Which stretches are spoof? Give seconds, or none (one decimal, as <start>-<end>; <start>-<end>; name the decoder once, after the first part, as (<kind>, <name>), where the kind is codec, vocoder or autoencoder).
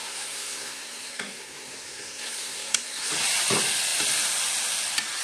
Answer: 0.0-3.1 (codec, SNAC)